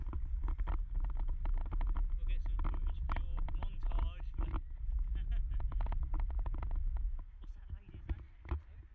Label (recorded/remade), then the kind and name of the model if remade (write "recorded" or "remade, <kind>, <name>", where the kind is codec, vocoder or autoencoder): recorded